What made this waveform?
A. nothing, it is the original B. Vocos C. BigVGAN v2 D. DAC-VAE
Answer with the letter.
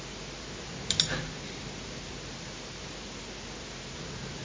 A